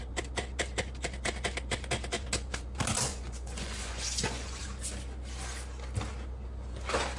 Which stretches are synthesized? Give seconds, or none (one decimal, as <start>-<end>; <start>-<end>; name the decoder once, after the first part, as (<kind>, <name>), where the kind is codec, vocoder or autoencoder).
3.1-4.6 (vocoder, Vocos)